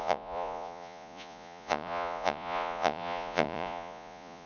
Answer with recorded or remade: remade